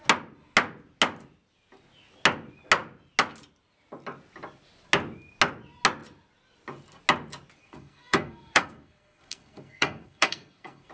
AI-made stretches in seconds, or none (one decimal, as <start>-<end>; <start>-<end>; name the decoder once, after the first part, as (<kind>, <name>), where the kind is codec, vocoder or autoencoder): 7.6-10.9 (codec, SNAC)

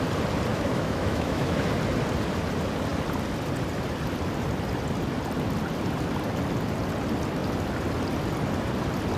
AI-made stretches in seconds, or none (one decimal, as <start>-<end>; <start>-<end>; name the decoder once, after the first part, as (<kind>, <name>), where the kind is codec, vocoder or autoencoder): 0.5-1.7 (autoencoder, DAC-VAE)